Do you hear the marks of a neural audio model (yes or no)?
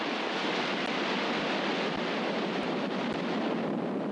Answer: no